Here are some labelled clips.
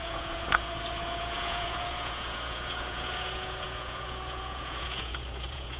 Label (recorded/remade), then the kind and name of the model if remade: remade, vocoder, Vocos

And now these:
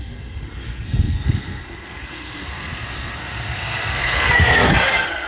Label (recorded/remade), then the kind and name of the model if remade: remade, codec, SNAC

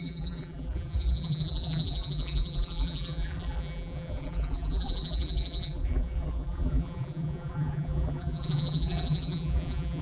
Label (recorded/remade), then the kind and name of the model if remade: remade, vocoder, BigVGAN v2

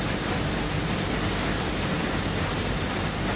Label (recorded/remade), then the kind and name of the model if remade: recorded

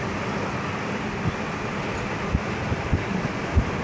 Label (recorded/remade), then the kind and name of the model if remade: recorded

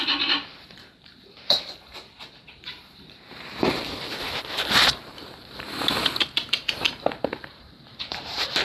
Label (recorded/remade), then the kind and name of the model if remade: remade, vocoder, BigVGAN v2